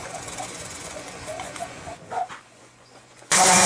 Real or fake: fake